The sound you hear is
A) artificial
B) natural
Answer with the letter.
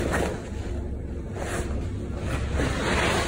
B